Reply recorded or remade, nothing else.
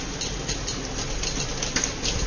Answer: recorded